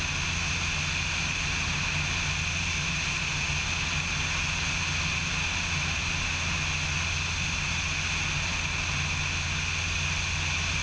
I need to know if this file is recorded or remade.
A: recorded